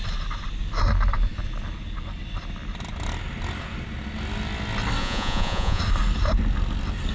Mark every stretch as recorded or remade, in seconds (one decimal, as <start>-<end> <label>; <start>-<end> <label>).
0.0-5.0 recorded; 5.0-5.8 remade; 5.8-7.1 recorded

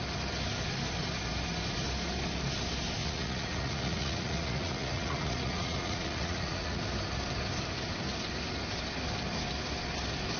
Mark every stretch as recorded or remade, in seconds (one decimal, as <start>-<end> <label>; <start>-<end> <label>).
0.0-3.0 recorded; 3.0-6.8 remade; 6.8-10.4 recorded